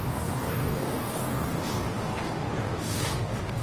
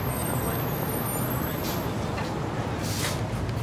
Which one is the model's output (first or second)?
first